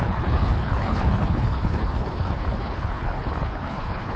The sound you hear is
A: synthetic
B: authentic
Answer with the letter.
A